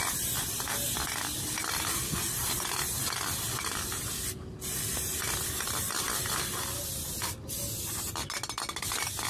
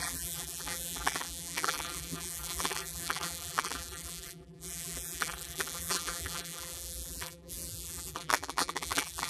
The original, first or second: first